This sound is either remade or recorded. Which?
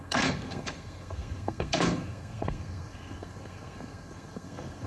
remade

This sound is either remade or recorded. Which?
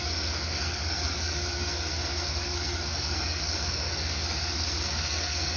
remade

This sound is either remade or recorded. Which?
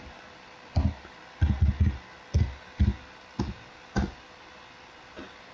recorded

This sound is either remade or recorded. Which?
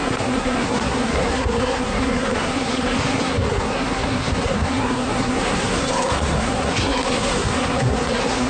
remade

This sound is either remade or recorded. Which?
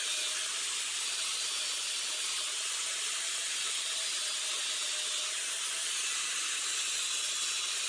recorded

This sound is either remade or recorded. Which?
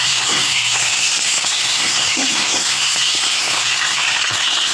remade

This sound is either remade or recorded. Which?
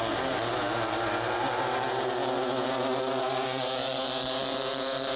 recorded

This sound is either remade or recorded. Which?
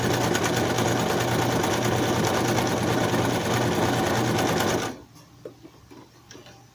recorded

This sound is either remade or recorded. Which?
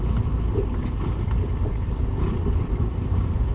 recorded